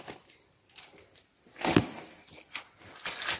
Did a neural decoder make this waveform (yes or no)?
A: no